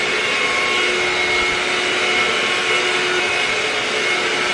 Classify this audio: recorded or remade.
recorded